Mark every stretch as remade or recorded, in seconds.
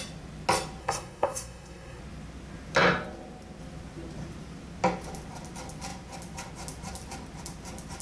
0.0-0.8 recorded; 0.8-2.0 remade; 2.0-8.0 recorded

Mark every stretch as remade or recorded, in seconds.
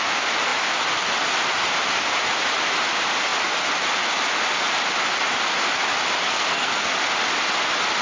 0.0-6.3 recorded; 6.3-6.9 remade; 6.9-8.0 recorded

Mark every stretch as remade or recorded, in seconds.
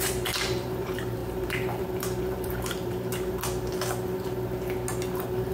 0.0-3.1 remade; 3.1-5.5 recorded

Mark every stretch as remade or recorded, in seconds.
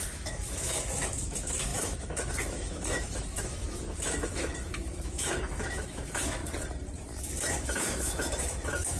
0.0-6.4 remade; 6.4-7.2 recorded; 7.2-9.0 remade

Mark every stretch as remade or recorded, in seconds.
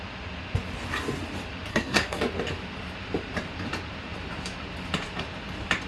0.0-1.7 recorded; 1.7-2.2 remade; 2.2-5.9 recorded